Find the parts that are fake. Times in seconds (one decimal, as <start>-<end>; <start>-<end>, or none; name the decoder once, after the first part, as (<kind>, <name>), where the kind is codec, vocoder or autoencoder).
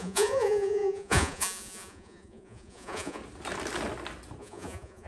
0.0-3.2 (vocoder, Vocos); 4.4-5.1